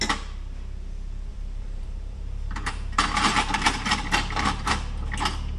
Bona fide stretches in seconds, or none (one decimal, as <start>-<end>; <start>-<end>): 0.0-1.3; 4.7-5.6